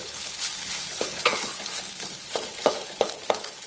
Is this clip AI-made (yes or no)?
yes